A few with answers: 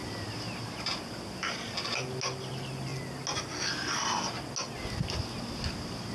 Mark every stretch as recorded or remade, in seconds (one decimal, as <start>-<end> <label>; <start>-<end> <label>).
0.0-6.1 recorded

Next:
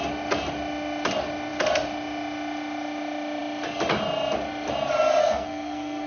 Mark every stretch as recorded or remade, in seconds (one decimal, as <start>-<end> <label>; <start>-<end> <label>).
0.0-5.2 recorded; 5.2-6.1 remade

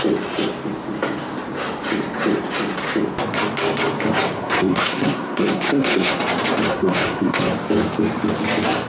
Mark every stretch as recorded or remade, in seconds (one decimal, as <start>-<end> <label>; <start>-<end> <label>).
0.0-4.4 recorded; 4.4-6.2 remade; 6.2-6.7 recorded; 6.7-7.5 remade; 7.5-8.9 recorded

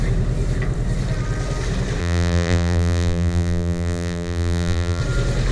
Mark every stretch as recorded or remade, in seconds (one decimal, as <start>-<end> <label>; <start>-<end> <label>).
0.0-2.0 recorded; 2.0-5.0 remade; 5.0-5.5 recorded

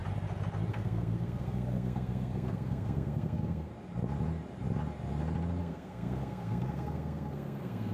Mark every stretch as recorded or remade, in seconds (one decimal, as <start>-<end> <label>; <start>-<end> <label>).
0.0-0.7 recorded; 0.7-3.7 remade; 3.7-5.6 recorded; 5.6-7.9 remade